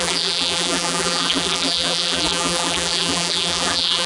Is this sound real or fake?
fake